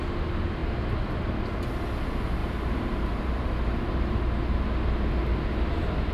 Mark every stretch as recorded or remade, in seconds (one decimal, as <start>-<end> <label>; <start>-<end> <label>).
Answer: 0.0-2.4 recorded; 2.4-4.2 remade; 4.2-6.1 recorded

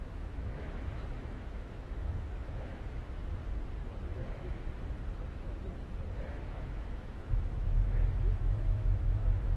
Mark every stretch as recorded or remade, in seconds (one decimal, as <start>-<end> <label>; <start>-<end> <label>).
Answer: 0.0-3.2 remade; 3.2-6.3 recorded; 6.3-9.6 remade

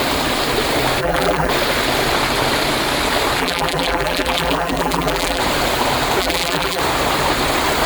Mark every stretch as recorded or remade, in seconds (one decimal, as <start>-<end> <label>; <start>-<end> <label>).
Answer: 0.0-1.0 recorded; 1.0-1.5 remade; 1.5-3.4 recorded; 3.4-5.4 remade; 5.4-6.2 recorded; 6.2-6.8 remade; 6.8-7.9 recorded

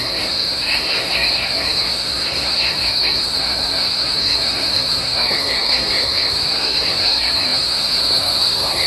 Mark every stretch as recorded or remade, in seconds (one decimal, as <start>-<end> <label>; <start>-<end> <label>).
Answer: 0.0-8.9 remade